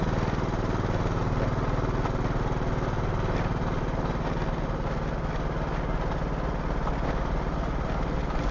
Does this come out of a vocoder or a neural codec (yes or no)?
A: no